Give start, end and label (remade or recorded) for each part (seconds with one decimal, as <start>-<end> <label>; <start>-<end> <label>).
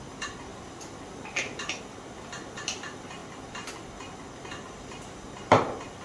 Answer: 0.0-0.5 recorded; 0.5-1.8 remade; 1.8-3.2 recorded; 3.2-3.8 remade; 3.8-6.0 recorded